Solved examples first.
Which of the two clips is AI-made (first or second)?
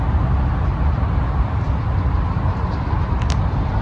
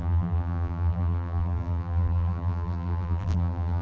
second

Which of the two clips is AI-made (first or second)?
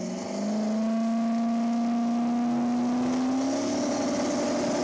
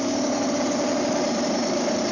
second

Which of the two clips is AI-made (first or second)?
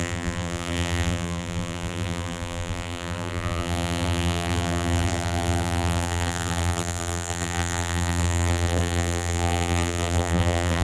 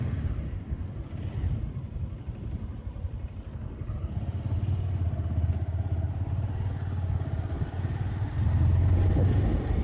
first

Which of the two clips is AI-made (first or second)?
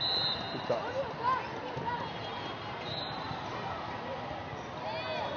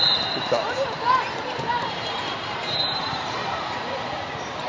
second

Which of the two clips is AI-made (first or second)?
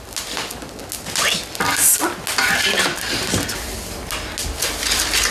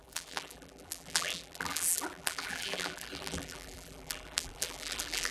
second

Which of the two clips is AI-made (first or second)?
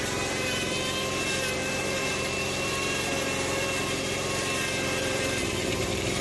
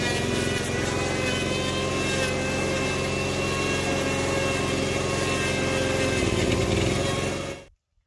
first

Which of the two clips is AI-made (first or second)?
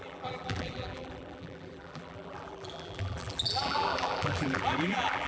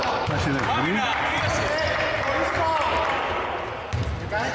first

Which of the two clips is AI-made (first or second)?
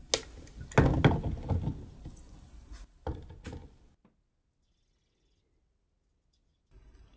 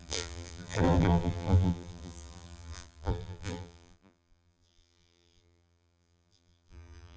second